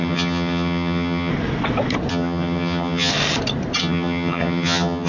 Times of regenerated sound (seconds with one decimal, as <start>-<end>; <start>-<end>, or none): 0.0-1.3; 2.1-3.1; 3.8-5.1